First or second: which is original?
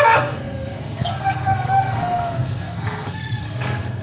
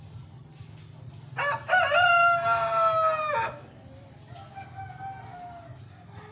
second